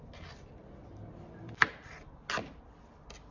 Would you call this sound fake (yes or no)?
no